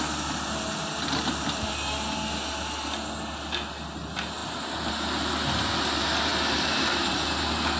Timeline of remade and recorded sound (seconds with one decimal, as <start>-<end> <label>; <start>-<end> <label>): 0.0-6.3 recorded; 6.3-7.1 remade; 7.1-7.8 recorded